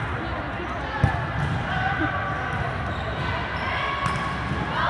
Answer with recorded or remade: recorded